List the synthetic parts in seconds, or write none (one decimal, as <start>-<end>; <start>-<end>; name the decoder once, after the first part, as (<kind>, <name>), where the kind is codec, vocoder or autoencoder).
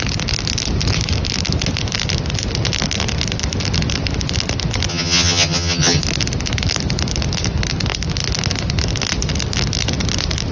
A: 4.9-6.0 (vocoder, HiFi-GAN)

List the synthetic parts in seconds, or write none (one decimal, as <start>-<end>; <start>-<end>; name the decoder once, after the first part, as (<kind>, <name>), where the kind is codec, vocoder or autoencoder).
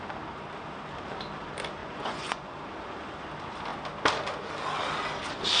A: 1.8-2.6 (vocoder, Vocos)